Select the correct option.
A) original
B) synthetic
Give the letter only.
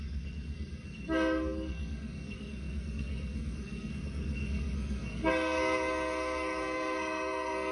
B